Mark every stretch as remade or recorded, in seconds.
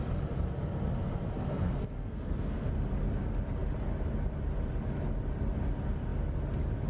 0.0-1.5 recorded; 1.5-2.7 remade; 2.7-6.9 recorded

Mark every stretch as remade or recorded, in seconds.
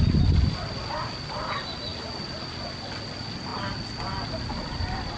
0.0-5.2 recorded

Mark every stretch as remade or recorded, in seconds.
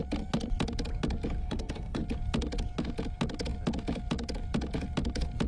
0.0-1.4 recorded; 1.4-2.0 remade; 2.0-5.5 recorded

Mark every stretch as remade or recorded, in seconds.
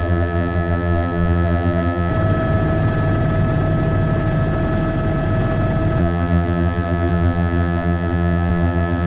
0.0-2.1 remade; 2.1-6.0 recorded; 6.0-9.1 remade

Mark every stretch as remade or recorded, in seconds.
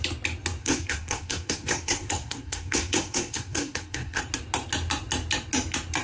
0.0-0.6 recorded; 0.6-4.2 remade; 4.2-6.0 recorded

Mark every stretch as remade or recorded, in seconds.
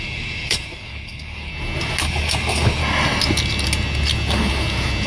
0.0-1.5 remade; 1.5-2.0 recorded; 2.0-2.8 remade; 2.8-5.1 recorded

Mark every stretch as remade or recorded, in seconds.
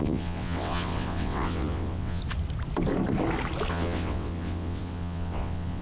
0.0-2.2 remade; 2.2-3.7 recorded; 3.7-5.8 remade